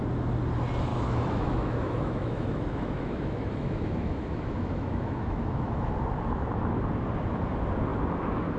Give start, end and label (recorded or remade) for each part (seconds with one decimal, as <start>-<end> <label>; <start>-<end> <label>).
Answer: 0.0-0.9 recorded; 0.9-5.9 remade; 5.9-8.6 recorded